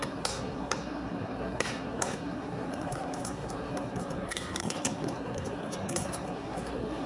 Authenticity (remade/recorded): remade